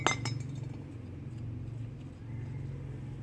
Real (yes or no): yes